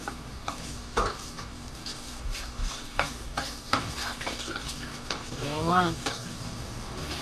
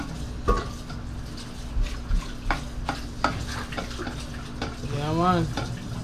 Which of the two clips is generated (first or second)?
first